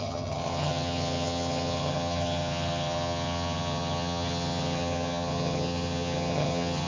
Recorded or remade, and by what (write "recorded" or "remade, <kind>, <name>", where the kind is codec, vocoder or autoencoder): remade, vocoder, HiFi-GAN